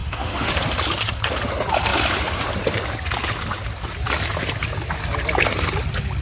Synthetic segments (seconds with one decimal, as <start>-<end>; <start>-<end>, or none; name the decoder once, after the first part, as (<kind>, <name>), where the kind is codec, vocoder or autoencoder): 0.0-0.5 (autoencoder, DAC-VAE)